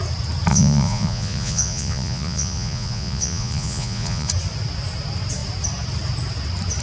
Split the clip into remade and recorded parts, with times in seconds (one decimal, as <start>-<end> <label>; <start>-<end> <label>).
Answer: 0.0-0.5 recorded; 0.5-4.3 remade; 4.3-6.8 recorded

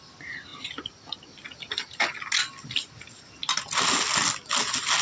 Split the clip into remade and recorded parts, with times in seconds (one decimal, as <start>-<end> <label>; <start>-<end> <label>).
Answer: 0.0-5.0 recorded

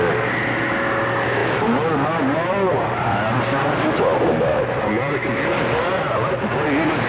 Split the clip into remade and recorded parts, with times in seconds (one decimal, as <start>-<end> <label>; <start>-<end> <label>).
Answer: 0.0-7.1 recorded

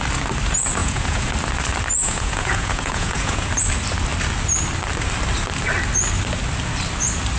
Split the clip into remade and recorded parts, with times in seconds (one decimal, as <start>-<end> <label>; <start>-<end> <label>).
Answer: 0.0-0.8 recorded; 0.8-1.3 remade; 1.3-2.0 recorded; 2.0-3.5 remade; 3.5-7.4 recorded